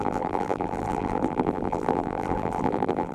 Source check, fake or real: fake